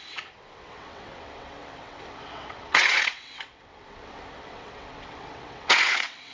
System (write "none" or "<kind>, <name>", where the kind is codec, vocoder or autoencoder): vocoder, WaveNeXt